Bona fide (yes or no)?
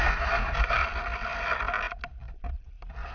yes